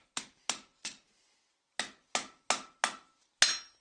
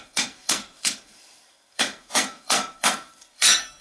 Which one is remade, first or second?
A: second